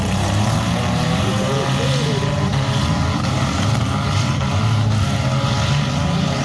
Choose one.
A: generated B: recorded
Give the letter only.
A